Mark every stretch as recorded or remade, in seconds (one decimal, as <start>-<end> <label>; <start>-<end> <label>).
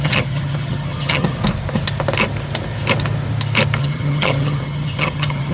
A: 0.0-1.4 remade; 1.4-3.8 recorded; 3.8-5.5 remade